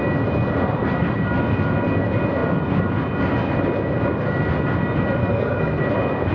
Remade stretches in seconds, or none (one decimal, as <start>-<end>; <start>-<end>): 5.2-5.8